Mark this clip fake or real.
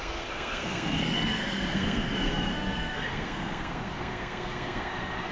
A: fake